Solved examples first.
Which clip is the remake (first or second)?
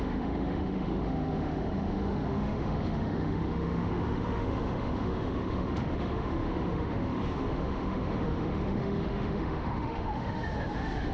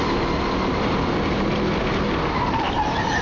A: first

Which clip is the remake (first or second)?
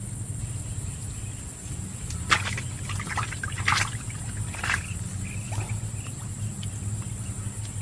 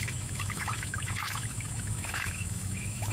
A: second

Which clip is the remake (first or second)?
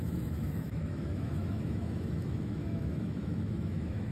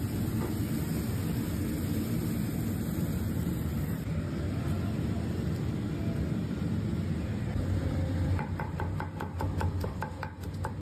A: first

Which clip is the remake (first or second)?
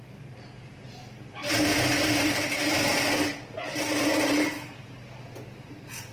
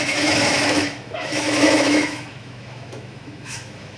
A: second